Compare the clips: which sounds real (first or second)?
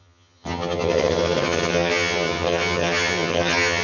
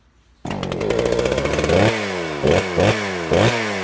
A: second